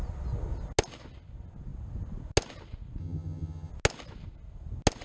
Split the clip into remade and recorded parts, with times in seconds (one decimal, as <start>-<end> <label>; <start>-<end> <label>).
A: 0.0-3.0 recorded; 3.0-3.7 remade; 3.7-5.0 recorded